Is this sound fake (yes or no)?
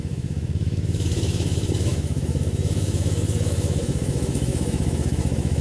yes